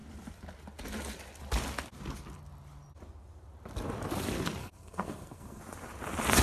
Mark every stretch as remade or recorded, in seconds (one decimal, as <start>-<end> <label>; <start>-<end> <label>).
0.0-4.6 recorded; 4.6-5.6 remade; 5.6-6.4 recorded

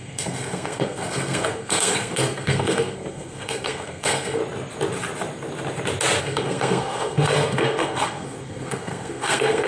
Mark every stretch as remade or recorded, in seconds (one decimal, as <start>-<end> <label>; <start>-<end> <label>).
0.0-4.4 remade; 4.4-6.2 recorded; 6.2-9.7 remade